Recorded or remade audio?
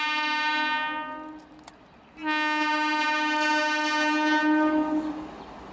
recorded